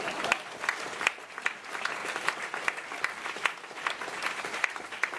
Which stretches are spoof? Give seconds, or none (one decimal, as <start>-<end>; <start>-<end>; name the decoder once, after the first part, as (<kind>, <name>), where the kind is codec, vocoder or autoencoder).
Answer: none